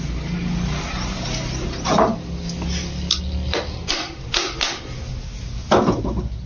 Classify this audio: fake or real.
real